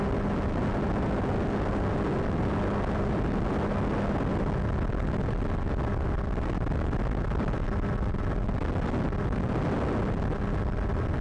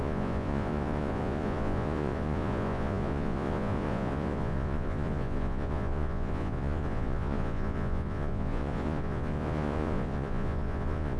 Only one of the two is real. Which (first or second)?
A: first